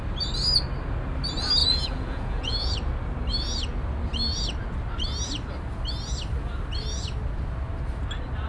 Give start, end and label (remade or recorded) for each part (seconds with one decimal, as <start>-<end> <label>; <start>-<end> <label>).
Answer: 0.0-1.6 recorded; 1.6-2.7 remade; 2.7-8.5 recorded